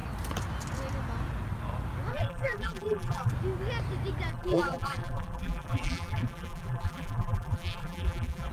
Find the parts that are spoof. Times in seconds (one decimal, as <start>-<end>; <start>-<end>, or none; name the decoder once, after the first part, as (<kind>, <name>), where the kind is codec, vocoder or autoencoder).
2.1-3.3 (vocoder, BigVGAN v2); 4.3-8.5